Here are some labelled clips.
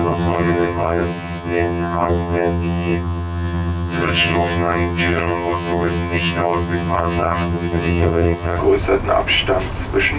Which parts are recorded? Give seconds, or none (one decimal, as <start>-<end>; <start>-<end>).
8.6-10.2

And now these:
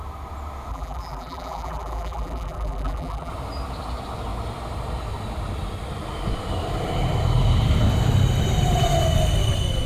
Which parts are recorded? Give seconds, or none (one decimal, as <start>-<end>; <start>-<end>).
0.0-0.7; 3.3-9.9

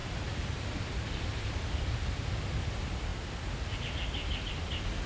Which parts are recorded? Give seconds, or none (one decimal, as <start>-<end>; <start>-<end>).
0.0-5.1